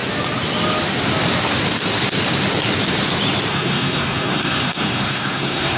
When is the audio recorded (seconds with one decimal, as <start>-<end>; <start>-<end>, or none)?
0.0-3.5